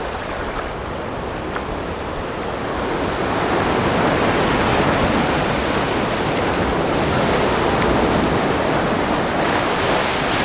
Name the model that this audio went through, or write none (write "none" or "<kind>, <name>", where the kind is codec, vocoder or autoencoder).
none